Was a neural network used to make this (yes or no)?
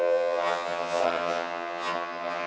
yes